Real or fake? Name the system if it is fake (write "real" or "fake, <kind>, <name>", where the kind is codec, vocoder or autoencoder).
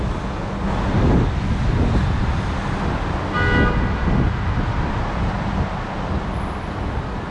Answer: real